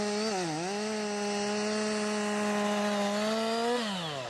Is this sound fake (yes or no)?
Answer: no